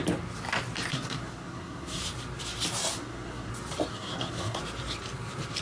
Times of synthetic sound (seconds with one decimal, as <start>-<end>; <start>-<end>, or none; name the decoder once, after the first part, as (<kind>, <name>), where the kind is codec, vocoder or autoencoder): 0.9-2.0 (codec, SNAC); 2.9-3.5; 3.9-4.6